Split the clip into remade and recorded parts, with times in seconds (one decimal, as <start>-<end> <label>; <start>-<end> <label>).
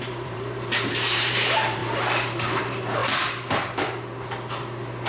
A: 0.0-3.0 remade; 3.0-5.1 recorded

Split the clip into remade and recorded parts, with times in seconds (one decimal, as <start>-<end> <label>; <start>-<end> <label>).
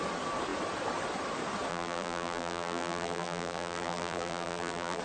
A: 0.0-1.7 recorded; 1.7-5.0 remade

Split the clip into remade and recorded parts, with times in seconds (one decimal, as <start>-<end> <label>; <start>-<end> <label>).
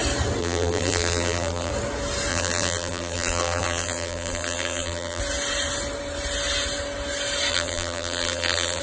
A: 0.0-0.4 recorded; 0.4-1.7 remade; 1.7-2.3 recorded; 2.3-5.2 remade; 5.2-7.5 recorded; 7.5-8.8 remade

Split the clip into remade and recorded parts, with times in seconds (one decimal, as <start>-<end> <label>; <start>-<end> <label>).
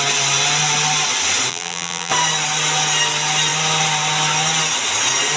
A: 0.0-1.5 recorded; 1.5-2.1 remade; 2.1-5.4 recorded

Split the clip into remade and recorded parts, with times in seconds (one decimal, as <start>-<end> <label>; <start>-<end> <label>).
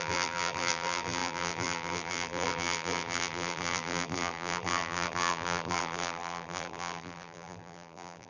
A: 0.0-8.3 remade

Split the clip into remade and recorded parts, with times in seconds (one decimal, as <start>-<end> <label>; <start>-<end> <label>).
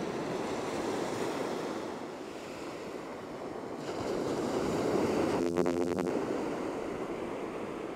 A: 0.0-5.4 recorded; 5.4-6.1 remade; 6.1-8.0 recorded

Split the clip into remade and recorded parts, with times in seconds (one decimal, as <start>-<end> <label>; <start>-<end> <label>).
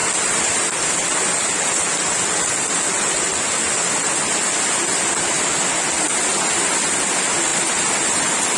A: 0.0-7.5 recorded; 7.5-8.6 remade